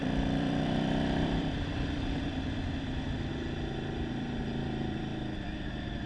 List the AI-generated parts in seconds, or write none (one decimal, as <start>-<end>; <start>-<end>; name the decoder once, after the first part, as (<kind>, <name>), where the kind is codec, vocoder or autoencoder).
0.0-5.1 (vocoder, BigVGAN v2)